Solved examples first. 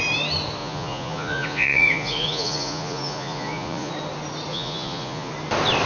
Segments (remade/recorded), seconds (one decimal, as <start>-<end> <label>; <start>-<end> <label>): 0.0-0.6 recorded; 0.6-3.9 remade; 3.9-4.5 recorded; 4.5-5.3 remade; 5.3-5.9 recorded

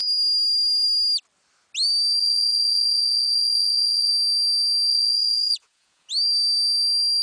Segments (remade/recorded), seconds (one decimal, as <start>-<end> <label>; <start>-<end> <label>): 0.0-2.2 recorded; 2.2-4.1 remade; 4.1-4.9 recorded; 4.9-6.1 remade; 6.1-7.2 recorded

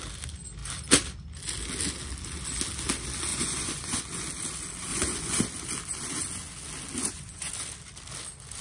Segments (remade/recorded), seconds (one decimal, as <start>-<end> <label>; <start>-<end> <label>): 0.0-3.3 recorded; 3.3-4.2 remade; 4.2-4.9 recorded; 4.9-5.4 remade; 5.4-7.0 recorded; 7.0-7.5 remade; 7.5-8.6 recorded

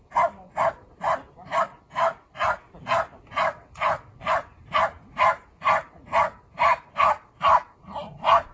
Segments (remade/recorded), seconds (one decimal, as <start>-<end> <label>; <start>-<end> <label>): 0.0-8.5 recorded

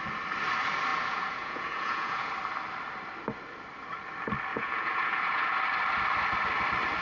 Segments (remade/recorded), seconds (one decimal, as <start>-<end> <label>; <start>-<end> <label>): 0.0-0.9 recorded; 0.9-2.3 remade; 2.3-4.5 recorded; 4.5-5.6 remade; 5.6-7.0 recorded

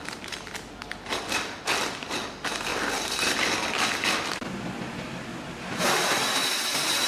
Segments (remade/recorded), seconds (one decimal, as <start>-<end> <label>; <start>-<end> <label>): 0.0-7.1 recorded

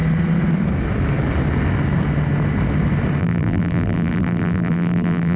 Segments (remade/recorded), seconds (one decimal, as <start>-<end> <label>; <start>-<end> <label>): 0.0-3.2 recorded; 3.2-5.4 remade